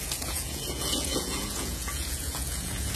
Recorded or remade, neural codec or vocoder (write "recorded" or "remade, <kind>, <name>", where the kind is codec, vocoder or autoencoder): remade, vocoder, Vocos